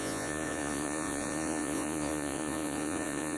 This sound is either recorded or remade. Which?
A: remade